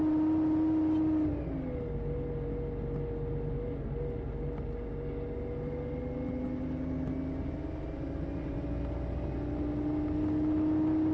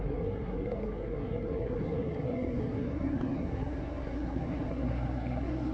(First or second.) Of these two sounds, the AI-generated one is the second